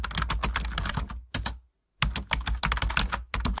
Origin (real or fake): real